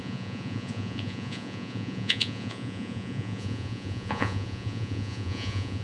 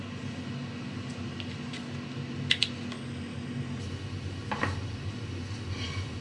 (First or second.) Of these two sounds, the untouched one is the second